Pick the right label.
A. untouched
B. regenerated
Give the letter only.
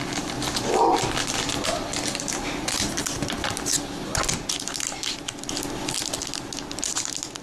A